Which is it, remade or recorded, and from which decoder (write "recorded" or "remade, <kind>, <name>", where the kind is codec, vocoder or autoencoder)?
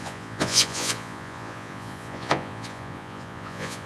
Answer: remade, vocoder, Vocos